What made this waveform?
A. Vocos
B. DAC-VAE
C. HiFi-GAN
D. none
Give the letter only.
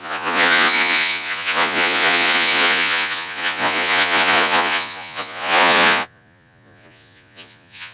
A